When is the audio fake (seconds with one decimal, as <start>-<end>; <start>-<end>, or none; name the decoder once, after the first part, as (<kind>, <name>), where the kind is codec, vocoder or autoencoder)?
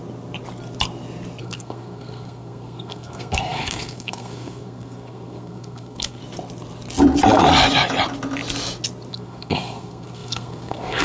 1.4-6.2 (codec, SNAC); 9.1-11.0